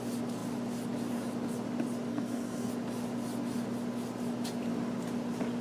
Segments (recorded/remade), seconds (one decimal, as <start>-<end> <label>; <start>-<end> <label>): 0.0-2.1 recorded; 2.1-2.7 remade; 2.7-5.6 recorded